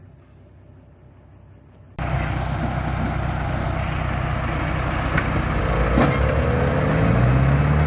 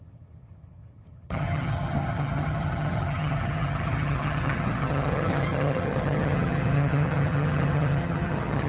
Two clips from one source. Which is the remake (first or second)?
second